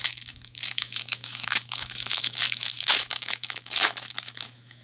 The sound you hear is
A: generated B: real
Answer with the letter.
A